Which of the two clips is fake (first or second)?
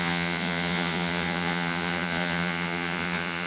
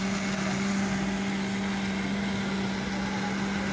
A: first